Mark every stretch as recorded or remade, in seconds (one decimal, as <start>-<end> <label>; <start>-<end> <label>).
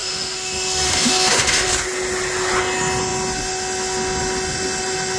0.0-1.7 remade; 1.7-5.2 recorded